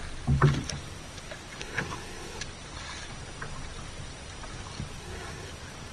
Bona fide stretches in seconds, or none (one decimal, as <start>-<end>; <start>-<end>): 0.0-1.6; 2.4-5.0; 5.5-5.9